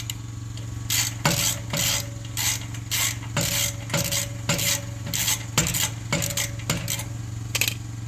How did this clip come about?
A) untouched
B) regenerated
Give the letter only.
A